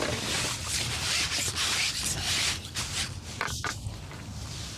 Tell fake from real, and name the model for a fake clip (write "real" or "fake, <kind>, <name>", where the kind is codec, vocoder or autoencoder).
real